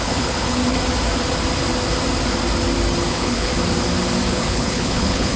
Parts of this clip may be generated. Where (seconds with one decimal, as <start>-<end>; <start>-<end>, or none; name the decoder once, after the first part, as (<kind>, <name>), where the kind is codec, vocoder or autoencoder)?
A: 0.0-0.6 (codec, HILCodec); 3.1-3.5; 4.3-5.4